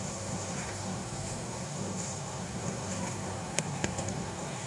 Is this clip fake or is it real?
fake